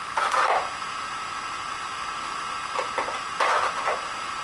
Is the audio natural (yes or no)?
yes